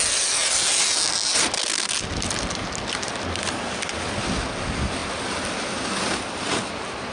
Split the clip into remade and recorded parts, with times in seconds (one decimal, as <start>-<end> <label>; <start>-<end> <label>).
0.0-7.1 recorded